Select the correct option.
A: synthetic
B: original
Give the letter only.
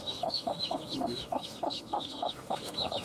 A